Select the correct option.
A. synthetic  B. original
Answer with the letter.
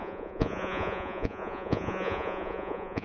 A